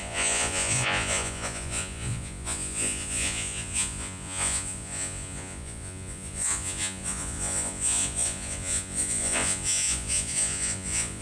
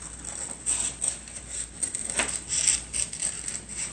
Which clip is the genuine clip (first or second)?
second